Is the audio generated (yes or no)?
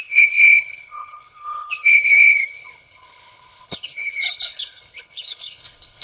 yes